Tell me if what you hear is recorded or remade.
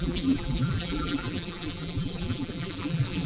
remade